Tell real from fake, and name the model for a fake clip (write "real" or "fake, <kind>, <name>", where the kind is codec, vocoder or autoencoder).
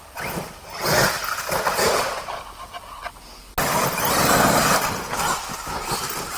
real